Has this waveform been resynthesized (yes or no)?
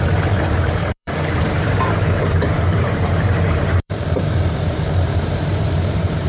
yes